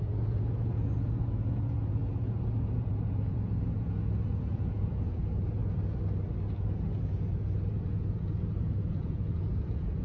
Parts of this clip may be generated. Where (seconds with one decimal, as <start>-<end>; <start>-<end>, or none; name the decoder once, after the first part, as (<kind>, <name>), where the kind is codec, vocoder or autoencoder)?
0.0-5.6 (vocoder, Vocos); 6.5-10.0